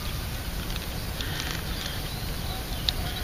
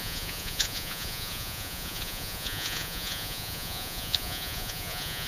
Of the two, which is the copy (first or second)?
second